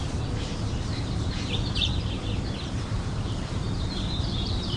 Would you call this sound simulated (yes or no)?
yes